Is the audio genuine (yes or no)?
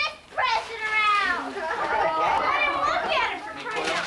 no